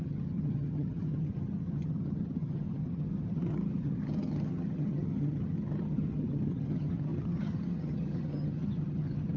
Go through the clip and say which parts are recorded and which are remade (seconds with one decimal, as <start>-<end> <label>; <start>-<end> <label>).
0.0-9.4 remade